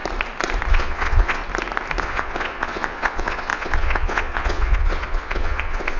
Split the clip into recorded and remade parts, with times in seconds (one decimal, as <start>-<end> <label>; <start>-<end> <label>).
0.0-0.7 recorded; 0.7-1.4 remade; 1.4-2.0 recorded; 2.0-6.0 remade